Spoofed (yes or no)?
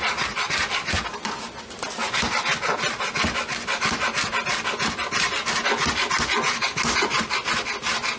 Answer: no